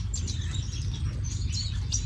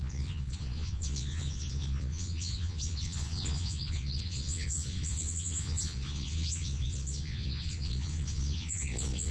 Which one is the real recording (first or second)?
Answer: first